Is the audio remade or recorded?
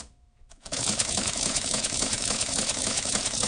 remade